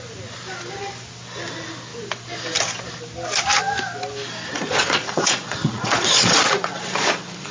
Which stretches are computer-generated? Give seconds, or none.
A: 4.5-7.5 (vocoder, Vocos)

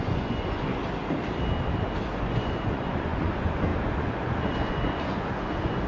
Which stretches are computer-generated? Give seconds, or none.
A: 0.0-0.8 (vocoder, Vocos); 2.2-5.9

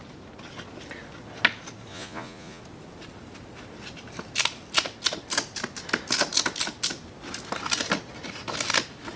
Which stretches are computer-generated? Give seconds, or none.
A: 1.9-2.6 (vocoder, Vocos)

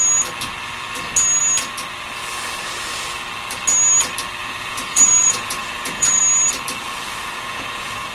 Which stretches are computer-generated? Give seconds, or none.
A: 4.4-6.2 (vocoder, Vocos); 7.2-8.1

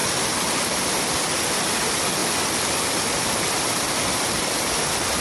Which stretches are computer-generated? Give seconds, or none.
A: none

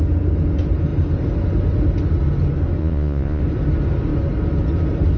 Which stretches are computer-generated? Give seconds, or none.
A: 2.8-3.4 (vocoder, Vocos)

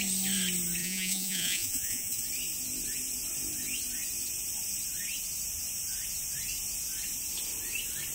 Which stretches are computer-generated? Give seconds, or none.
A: 0.8-2.2 (vocoder, Vocos)